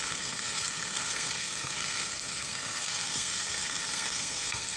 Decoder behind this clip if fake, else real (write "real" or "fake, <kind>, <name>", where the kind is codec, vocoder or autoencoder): fake, codec, SNAC